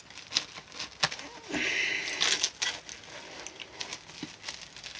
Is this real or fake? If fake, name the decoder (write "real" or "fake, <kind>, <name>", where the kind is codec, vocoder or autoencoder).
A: real